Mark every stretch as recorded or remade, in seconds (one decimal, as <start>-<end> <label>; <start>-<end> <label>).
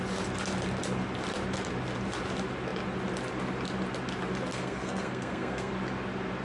0.0-4.5 recorded; 4.5-5.7 remade; 5.7-6.4 recorded